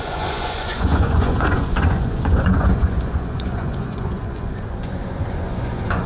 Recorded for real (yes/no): no